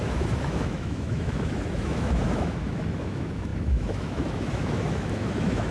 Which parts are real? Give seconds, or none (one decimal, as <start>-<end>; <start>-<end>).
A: none